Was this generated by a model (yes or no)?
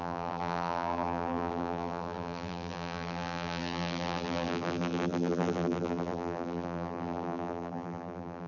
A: yes